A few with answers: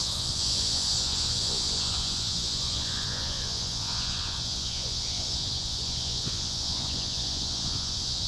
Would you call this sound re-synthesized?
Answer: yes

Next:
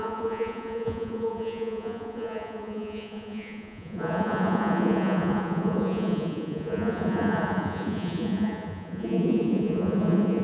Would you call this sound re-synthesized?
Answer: yes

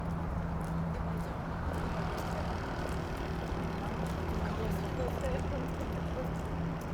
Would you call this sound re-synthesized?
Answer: no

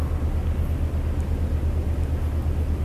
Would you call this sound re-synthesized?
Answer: no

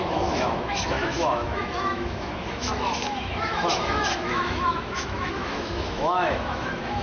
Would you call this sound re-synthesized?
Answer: yes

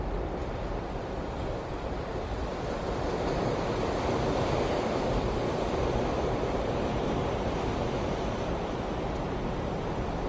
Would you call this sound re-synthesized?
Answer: no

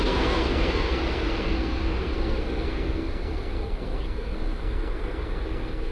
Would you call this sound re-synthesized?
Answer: yes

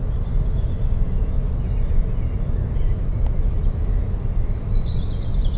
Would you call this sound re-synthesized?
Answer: no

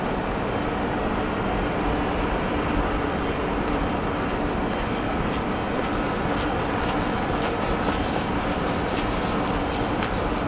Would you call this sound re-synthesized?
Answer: no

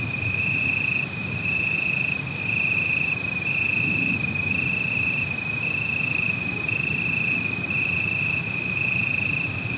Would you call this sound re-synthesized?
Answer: yes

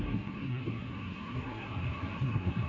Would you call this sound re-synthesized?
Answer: yes